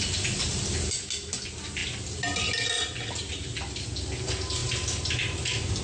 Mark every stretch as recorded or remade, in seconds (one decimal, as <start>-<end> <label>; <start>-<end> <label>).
0.0-5.8 recorded